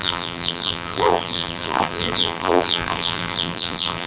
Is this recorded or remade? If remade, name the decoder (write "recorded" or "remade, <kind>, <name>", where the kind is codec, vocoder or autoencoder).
remade, vocoder, BigVGAN v2